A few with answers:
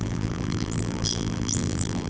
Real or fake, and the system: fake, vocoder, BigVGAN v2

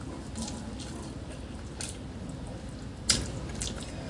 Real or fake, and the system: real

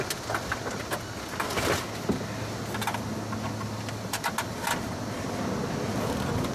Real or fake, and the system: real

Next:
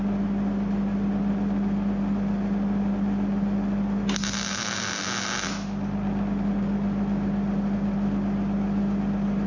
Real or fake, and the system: real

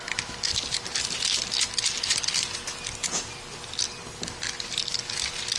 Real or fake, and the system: real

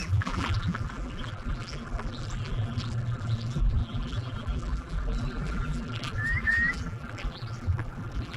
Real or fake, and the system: fake, vocoder, BigVGAN v2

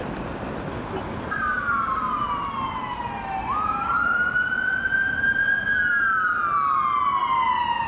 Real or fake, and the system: real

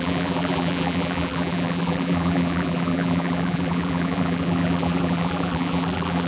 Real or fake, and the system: fake, vocoder, BigVGAN v2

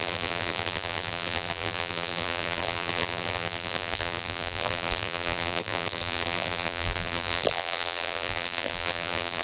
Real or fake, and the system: fake, vocoder, BigVGAN v2